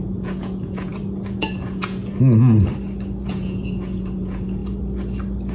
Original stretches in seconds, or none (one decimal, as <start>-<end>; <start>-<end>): 0.9-1.5; 2.0-3.3; 4.6-5.5